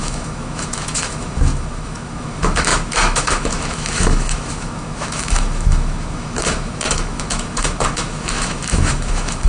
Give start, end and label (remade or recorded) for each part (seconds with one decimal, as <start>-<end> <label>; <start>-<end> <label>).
0.0-9.5 remade